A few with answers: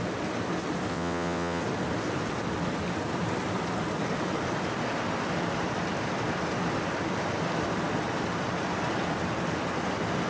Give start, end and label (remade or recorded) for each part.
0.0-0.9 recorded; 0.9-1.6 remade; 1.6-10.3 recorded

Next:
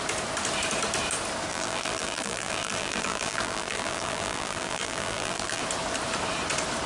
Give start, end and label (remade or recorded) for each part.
0.0-1.5 recorded; 1.5-5.6 remade; 5.6-6.9 recorded